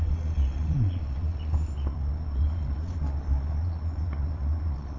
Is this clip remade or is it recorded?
remade